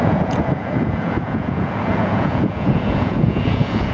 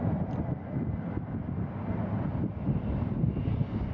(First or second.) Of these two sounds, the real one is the second